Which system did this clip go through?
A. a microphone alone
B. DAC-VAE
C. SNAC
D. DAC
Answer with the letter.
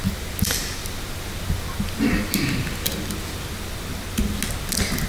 A